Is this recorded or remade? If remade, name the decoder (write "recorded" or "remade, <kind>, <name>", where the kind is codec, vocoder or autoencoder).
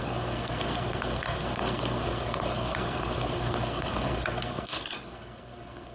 remade, codec, SNAC